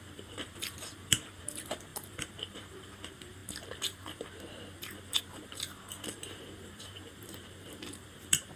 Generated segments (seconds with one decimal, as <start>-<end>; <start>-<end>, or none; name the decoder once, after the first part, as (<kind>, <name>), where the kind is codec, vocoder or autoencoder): 0.0-3.4 (vocoder, BigVGAN v2); 5.2-8.6